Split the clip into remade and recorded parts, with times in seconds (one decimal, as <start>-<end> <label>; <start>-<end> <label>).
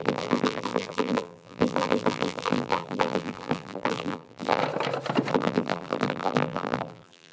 0.0-4.6 remade; 4.6-5.3 recorded; 5.3-7.3 remade